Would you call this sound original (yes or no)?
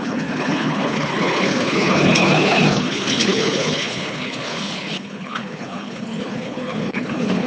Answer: no